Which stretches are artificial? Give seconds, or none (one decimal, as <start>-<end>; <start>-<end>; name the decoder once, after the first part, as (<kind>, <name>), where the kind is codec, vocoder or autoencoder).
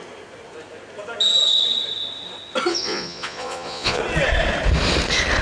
2.7-4.0 (vocoder, Vocos)